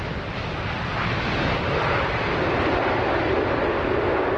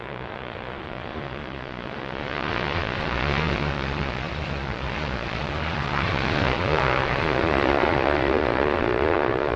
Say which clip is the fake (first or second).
second